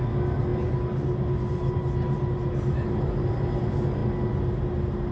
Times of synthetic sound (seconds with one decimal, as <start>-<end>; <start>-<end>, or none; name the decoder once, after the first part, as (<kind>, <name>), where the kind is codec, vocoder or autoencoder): none